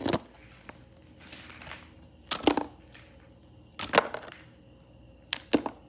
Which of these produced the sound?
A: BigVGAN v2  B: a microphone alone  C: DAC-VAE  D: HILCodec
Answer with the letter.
B